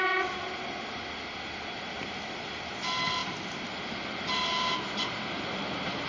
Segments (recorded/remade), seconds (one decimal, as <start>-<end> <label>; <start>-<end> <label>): 0.0-6.1 recorded